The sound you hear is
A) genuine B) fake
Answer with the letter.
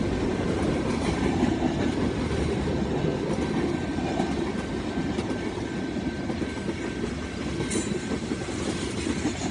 A